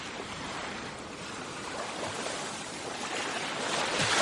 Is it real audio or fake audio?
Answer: real